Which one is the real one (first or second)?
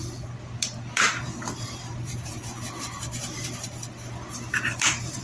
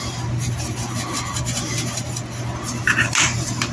second